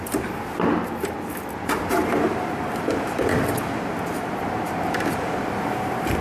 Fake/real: real